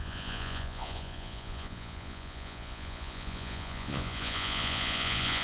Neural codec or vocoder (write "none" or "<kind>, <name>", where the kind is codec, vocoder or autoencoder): vocoder, Vocos